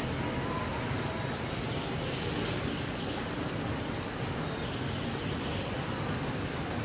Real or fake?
real